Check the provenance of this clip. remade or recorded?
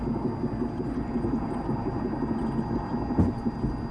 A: recorded